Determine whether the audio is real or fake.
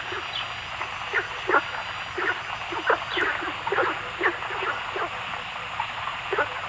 real